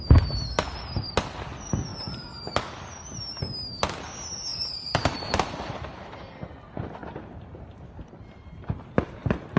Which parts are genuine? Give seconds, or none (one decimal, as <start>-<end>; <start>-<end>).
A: 0.0-4.5; 5.8-9.6